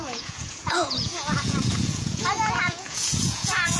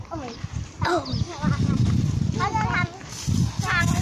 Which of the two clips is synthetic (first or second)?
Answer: first